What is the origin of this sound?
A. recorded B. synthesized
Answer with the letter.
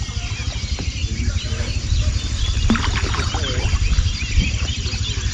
A